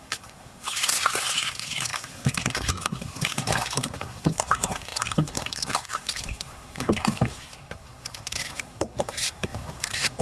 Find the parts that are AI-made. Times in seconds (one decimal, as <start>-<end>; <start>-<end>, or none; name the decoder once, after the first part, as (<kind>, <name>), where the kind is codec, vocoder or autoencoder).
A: 0.0-10.2 (codec, SNAC)